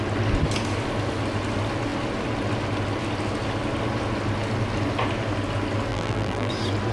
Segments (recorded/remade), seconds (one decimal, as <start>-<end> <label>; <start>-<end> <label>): 0.0-5.9 recorded; 5.9-6.5 remade; 6.5-6.9 recorded